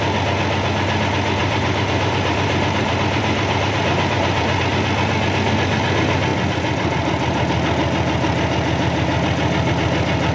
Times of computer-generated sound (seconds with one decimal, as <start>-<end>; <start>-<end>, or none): 1.4-4.6

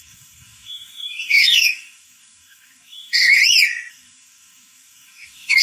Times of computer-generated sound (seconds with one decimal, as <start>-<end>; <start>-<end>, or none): 0.0-3.4; 3.9-5.6

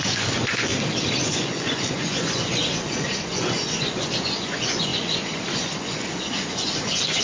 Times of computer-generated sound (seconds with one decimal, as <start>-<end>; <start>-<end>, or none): 0.0-0.7; 1.2-7.2

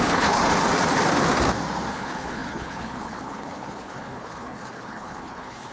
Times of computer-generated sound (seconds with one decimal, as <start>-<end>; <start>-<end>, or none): 0.0-0.4; 1.9-5.7

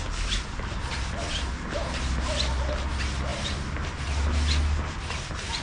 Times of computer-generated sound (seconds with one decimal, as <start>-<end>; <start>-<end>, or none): none

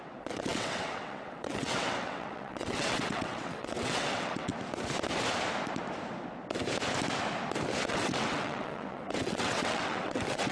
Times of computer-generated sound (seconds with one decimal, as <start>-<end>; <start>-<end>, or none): 0.0-4.5; 7.9-10.5